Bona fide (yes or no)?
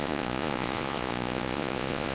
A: no